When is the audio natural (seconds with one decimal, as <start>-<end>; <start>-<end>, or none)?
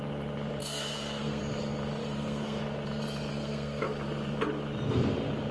0.0-0.6; 1.4-2.0; 2.6-3.3; 3.8-5.5